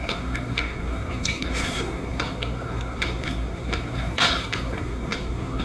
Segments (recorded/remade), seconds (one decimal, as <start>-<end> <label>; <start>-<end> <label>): 0.0-5.6 remade